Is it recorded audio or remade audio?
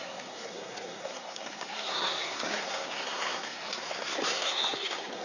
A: remade